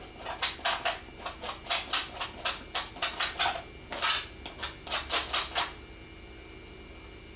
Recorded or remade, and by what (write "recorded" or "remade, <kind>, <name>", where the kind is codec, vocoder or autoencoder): recorded